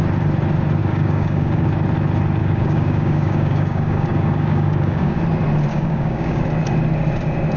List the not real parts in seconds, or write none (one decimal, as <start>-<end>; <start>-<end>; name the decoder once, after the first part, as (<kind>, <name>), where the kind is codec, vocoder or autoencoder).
0.8-1.7 (codec, DAC); 2.4-5.2; 5.7-6.4